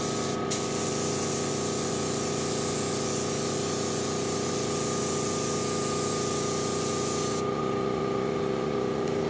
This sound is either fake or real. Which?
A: fake